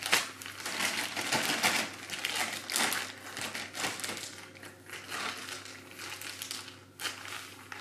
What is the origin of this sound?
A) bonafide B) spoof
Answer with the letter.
A